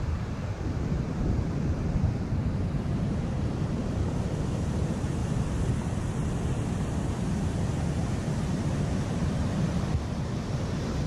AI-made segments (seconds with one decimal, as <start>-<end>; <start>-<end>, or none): 0.0-5.2; 7.8-11.1